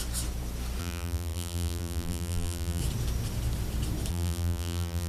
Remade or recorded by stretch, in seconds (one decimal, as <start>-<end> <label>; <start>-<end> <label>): 0.0-0.8 recorded; 0.8-2.8 remade; 2.8-4.1 recorded; 4.1-5.1 remade